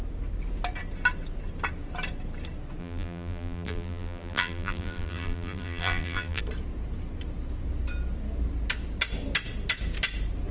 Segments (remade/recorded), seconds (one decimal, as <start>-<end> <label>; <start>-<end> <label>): 0.0-2.8 recorded; 2.8-6.4 remade; 6.4-10.5 recorded